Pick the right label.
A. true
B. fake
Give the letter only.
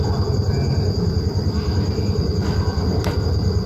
A